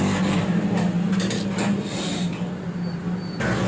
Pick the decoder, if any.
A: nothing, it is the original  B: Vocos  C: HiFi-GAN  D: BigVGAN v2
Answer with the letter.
A